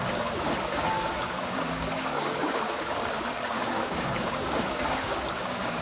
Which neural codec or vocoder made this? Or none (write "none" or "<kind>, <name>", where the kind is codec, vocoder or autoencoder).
codec, DAC